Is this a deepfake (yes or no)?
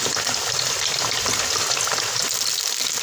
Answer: no